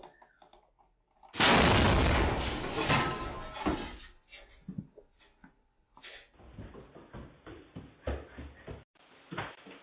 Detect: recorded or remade recorded